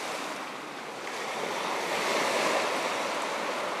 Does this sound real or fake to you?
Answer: real